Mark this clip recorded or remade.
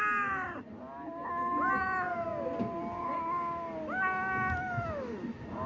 recorded